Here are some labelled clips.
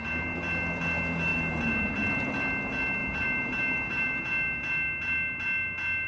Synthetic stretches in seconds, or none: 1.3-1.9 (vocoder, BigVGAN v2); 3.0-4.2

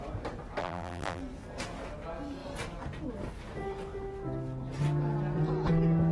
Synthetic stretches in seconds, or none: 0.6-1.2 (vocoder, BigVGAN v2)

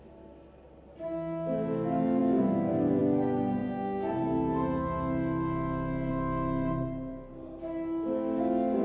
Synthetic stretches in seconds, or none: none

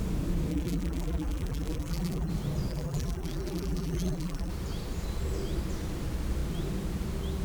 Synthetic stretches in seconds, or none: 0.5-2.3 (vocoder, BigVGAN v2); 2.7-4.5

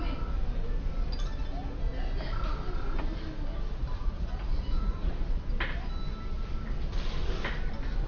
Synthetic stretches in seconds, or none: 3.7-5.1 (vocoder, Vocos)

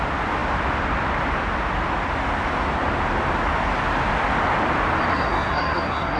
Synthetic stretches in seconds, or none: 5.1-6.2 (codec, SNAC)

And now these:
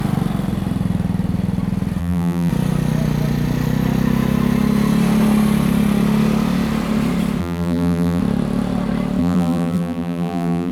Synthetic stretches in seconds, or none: 2.0-2.5 (vocoder, BigVGAN v2); 7.4-8.2; 9.2-10.7

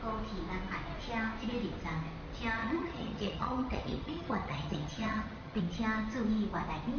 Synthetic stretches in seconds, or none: 2.6-5.6 (vocoder, HiFi-GAN)